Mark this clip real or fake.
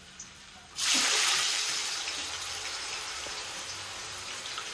fake